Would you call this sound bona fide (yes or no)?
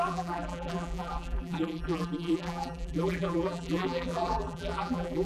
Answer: no